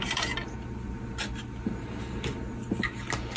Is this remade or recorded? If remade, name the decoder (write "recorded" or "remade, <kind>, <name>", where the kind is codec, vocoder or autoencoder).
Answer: recorded